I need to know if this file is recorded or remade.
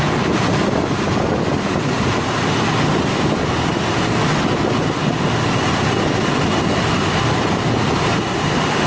recorded